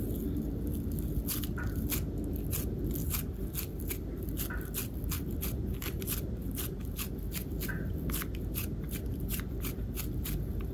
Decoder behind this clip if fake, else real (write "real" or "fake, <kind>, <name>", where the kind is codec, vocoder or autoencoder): real